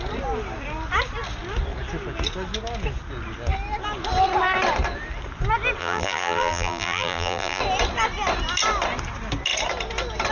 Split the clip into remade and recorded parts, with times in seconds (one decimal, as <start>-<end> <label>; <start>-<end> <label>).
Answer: 0.0-5.8 recorded; 5.8-7.6 remade; 7.6-10.3 recorded